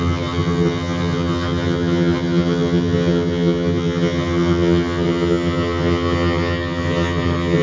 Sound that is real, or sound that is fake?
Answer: fake